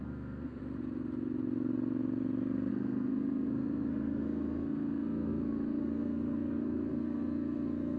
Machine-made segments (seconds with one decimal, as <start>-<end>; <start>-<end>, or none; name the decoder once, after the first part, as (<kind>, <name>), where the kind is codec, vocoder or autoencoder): 0.0-0.6 (codec, SNAC); 2.7-8.0